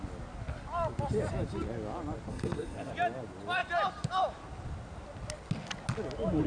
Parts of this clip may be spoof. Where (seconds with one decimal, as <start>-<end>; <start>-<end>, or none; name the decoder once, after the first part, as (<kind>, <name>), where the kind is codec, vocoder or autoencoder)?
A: 2.3-2.9 (codec, SNAC)